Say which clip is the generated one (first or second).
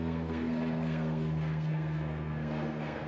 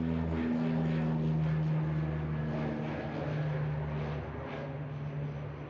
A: first